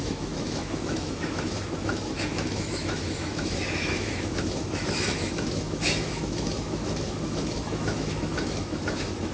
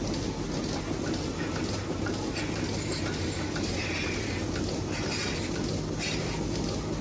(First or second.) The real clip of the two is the second